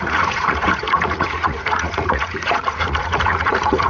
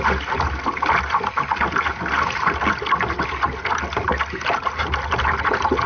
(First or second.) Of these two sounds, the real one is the second